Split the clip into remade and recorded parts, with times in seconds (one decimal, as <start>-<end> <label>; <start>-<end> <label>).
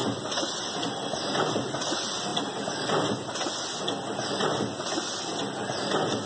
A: 0.0-6.3 recorded